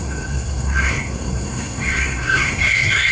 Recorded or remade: remade